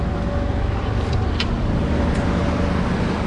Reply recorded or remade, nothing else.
recorded